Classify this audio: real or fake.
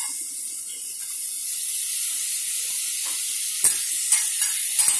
real